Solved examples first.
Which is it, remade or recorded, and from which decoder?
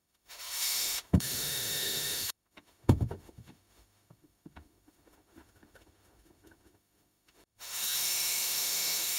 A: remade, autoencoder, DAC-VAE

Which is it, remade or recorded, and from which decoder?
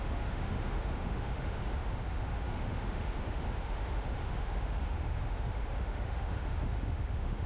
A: remade, autoencoder, DAC-VAE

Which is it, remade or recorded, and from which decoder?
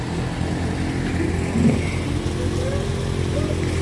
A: recorded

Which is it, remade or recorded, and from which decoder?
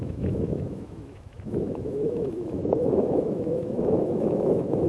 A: remade, autoencoder, DAC-VAE